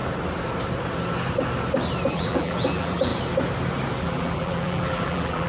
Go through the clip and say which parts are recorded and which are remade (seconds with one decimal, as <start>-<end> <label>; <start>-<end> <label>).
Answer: 0.0-2.1 recorded; 2.1-3.1 remade; 3.1-4.0 recorded; 4.0-5.5 remade